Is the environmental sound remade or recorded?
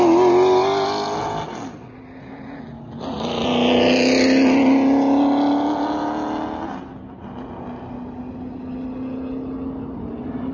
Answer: recorded